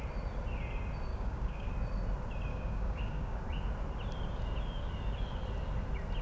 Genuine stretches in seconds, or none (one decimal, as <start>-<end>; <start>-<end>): 0.0-1.1; 1.7-2.5; 3.4-6.2